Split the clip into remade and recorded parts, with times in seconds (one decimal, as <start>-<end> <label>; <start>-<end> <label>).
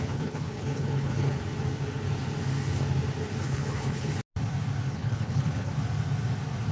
0.0-1.4 remade; 1.4-3.4 recorded; 3.4-4.1 remade; 4.1-4.9 recorded; 4.9-5.7 remade; 5.7-6.7 recorded